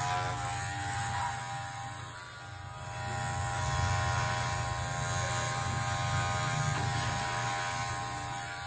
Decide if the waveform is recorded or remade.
recorded